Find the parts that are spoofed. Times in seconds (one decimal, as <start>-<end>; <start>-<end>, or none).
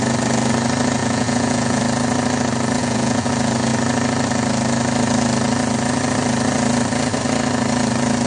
1.0-1.8; 2.8-3.3